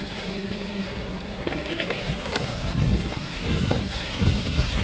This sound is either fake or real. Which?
fake